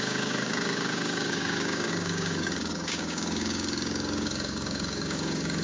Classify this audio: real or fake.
fake